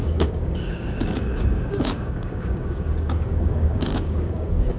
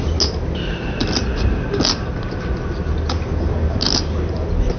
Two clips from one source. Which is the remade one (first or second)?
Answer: first